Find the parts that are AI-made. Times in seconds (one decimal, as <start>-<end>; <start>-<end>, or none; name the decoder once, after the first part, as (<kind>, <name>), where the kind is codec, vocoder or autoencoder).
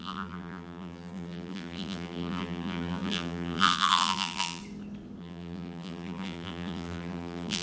0.0-4.6 (vocoder, BigVGAN v2); 5.2-7.6